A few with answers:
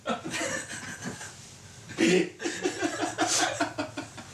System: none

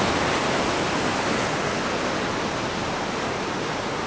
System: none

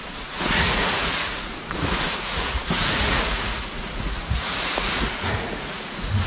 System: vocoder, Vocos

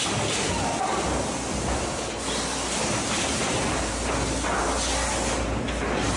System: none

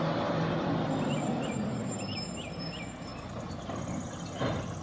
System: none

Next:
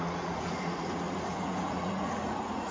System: vocoder, Vocos